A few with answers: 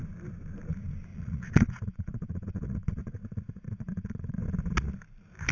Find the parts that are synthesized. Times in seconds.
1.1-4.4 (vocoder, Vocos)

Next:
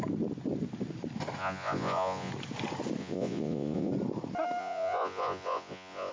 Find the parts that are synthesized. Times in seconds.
1.4-2.3 (vocoder, Vocos); 3.0-3.9; 4.6-6.1

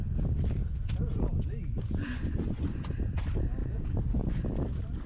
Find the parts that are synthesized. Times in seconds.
2.0-2.8 (vocoder, Vocos); 3.6-4.3

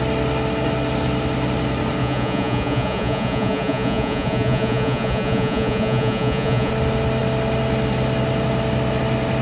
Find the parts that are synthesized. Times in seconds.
2.0-6.7 (vocoder, Vocos)

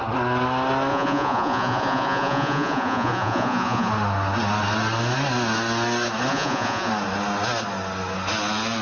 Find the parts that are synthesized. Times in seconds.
0.9-3.9 (vocoder, Vocos); 6.3-6.9